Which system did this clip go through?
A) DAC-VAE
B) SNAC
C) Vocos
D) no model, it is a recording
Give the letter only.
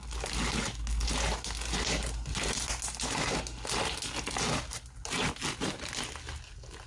D